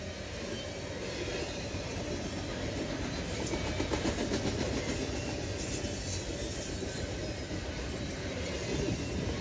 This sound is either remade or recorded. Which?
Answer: recorded